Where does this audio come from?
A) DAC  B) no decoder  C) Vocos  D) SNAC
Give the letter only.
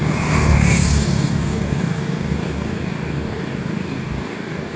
A